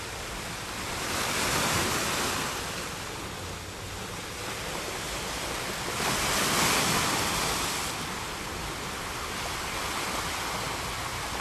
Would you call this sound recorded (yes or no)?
yes